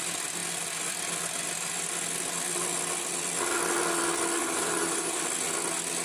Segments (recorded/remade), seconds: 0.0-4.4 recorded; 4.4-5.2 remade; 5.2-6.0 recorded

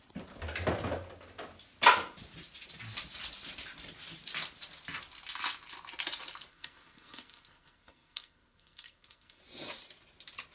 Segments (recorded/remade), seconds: 0.0-6.5 recorded; 6.5-9.4 remade; 9.4-10.5 recorded

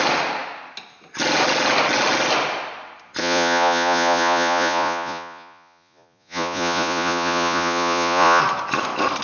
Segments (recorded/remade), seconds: 0.0-3.2 recorded; 3.2-8.4 remade; 8.4-9.2 recorded